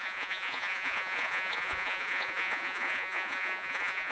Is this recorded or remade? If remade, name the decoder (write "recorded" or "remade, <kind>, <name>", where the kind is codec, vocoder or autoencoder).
remade, vocoder, Vocos